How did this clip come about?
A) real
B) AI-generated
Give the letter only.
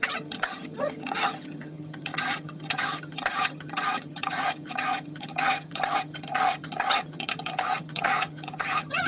B